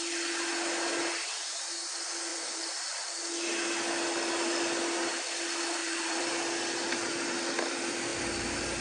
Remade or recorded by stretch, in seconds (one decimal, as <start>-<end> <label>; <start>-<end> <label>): 0.0-2.3 recorded; 2.3-3.1 remade; 3.1-5.8 recorded; 5.8-6.3 remade; 6.3-8.8 recorded